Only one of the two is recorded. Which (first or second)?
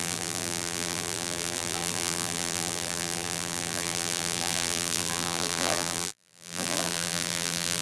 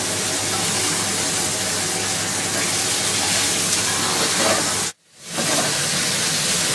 second